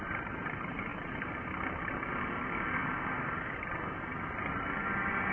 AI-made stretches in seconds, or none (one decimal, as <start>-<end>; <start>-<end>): none